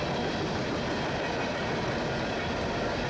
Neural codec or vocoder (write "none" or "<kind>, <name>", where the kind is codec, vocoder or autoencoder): none